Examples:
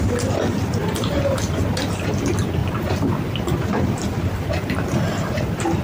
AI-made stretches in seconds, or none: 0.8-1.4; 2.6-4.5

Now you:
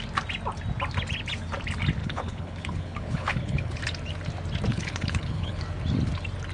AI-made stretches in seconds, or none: 2.0-3.8; 4.7-5.6

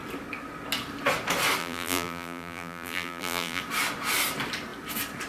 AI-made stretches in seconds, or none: 1.6-3.6

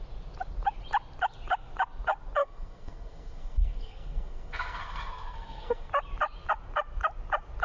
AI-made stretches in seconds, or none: 2.4-5.9

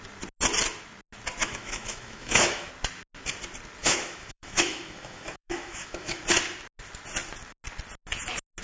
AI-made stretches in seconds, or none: 1.4-2.7; 3.8-6.2

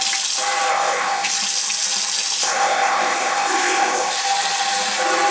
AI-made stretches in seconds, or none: 0.7-1.3; 2.4-4.2